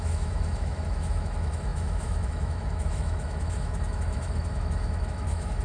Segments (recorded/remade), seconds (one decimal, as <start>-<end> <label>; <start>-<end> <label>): 0.0-5.6 remade